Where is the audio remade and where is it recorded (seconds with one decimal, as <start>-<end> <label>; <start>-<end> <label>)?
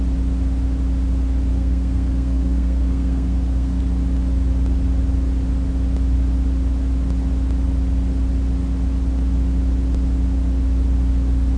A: 0.0-1.5 recorded; 1.5-3.8 remade; 3.8-11.6 recorded